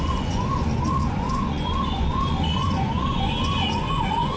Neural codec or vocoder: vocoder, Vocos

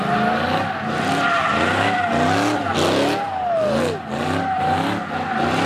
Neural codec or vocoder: none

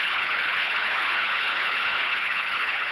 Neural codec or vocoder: codec, HILCodec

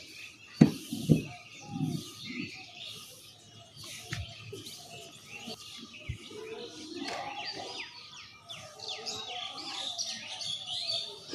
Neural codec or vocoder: none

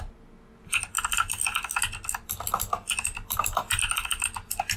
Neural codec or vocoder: none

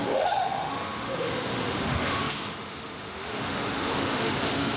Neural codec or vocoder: autoencoder, DAC-VAE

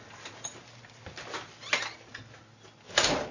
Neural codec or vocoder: none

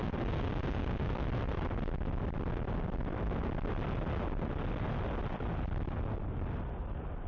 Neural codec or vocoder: none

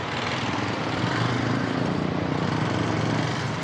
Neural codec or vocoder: none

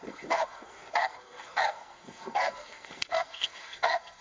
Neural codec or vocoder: codec, SNAC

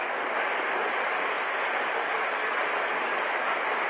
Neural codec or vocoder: none